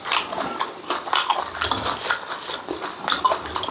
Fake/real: fake